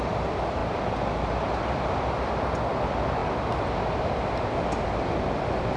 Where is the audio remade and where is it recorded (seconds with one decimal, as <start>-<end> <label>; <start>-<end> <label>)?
0.0-5.8 recorded